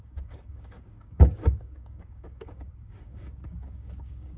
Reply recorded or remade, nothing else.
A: remade